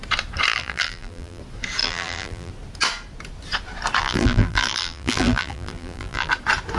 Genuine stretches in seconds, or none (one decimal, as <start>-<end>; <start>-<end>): 0.0-0.5; 1.4-1.8; 2.5-4.0; 6.3-6.8